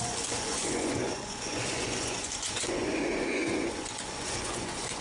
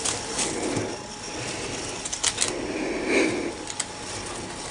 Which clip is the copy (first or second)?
first